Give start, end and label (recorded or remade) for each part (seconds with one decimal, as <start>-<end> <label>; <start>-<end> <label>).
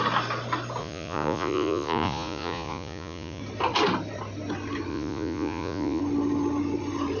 0.0-0.8 recorded; 0.8-3.4 remade; 3.4-4.9 recorded; 4.9-6.0 remade; 6.0-7.2 recorded